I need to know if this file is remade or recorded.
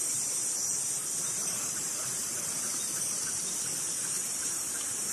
remade